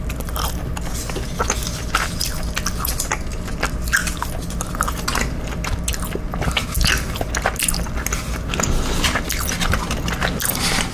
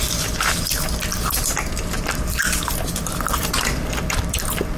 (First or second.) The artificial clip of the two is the second